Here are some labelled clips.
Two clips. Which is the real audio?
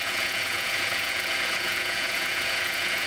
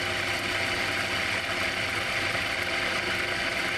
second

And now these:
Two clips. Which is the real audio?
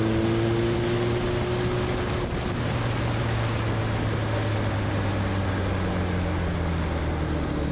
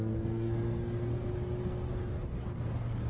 first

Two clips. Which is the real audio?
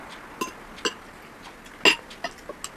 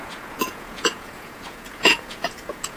first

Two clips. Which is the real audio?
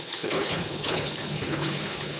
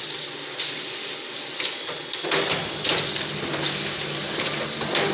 second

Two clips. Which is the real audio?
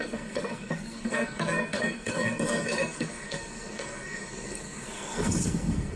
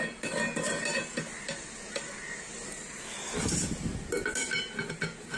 second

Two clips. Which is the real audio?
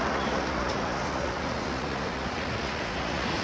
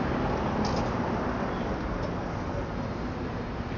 second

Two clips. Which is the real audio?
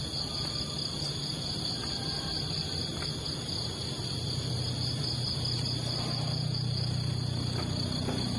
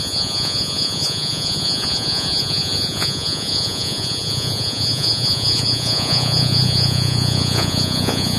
first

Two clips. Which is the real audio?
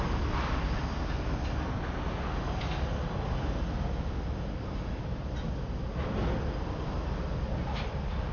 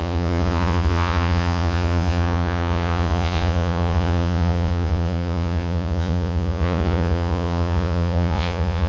first